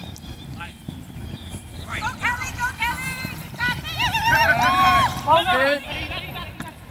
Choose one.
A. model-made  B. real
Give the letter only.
A